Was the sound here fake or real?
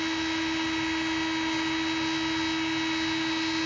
real